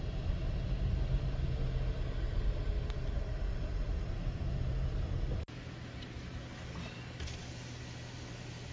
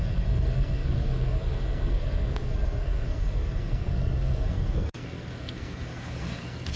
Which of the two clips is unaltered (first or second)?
first